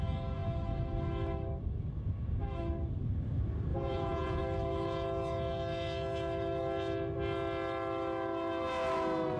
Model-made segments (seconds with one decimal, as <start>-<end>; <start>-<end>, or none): 3.7-4.4